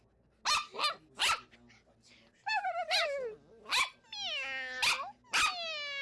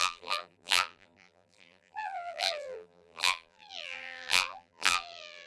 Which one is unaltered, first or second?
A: first